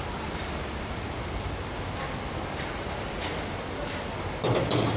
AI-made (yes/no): no